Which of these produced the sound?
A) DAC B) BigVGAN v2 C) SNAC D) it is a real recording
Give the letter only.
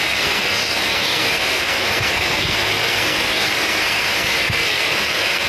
C